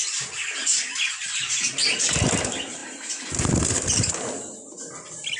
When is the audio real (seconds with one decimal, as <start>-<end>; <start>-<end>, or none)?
0.0-5.4